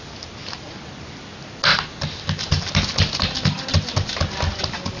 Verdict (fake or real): real